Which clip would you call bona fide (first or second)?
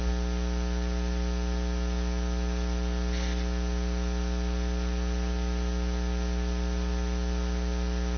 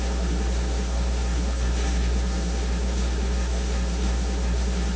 first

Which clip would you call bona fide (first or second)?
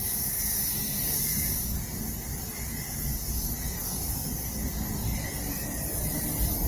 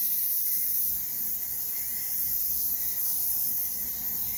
first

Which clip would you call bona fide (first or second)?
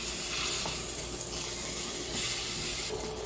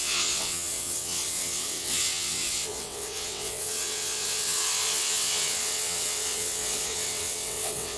first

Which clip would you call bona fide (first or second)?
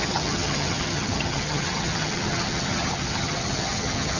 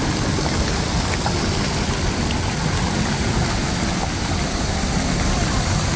second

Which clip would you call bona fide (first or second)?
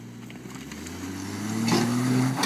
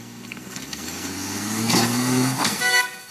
first